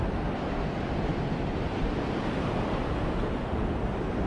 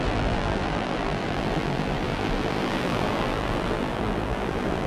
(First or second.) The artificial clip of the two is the second